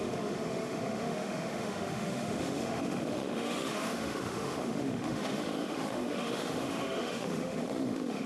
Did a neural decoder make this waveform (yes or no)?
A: yes